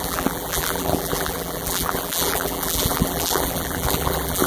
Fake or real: fake